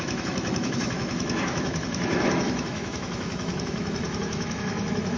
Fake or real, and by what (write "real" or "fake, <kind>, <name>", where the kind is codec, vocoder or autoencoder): fake, autoencoder, DAC-VAE